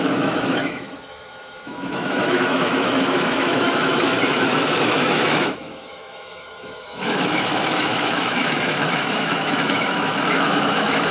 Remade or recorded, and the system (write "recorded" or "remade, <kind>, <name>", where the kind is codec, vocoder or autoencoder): remade, autoencoder, DAC-VAE